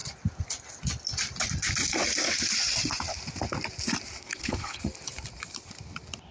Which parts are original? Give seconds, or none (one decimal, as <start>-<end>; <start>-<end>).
0.0-4.2; 4.8-6.3